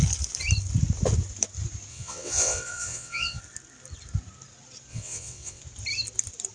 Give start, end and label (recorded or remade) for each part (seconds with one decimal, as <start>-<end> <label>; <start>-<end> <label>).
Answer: 0.0-1.9 recorded; 1.9-3.4 remade; 3.4-4.9 recorded; 4.9-5.6 remade; 5.6-6.5 recorded